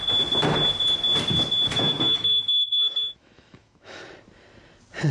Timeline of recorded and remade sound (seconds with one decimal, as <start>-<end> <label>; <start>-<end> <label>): 0.0-1.7 recorded; 1.7-4.0 remade; 4.0-5.1 recorded